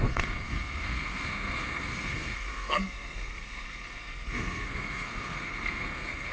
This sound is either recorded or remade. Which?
remade